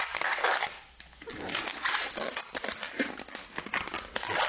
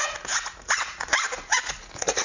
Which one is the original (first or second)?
first